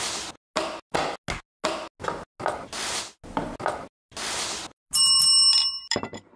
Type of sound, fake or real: real